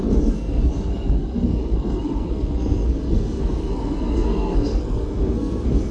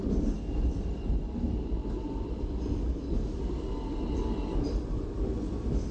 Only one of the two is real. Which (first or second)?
second